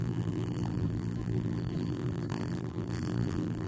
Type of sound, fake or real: fake